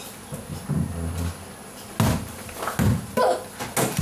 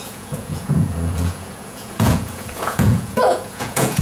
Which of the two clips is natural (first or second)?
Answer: first